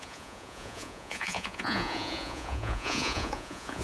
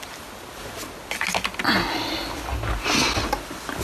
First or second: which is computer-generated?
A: first